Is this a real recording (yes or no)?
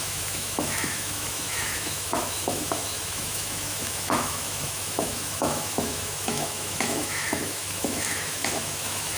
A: no